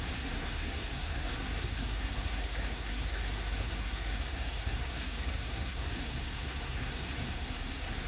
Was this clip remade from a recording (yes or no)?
yes